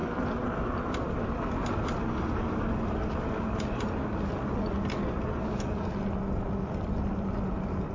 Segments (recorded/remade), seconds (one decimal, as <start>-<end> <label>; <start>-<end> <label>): 0.0-7.9 recorded